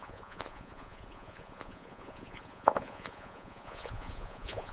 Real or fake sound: fake